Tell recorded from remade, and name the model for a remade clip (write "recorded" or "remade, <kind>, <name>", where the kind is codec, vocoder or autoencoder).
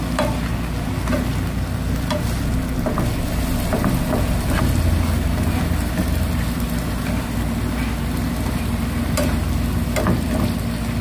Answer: recorded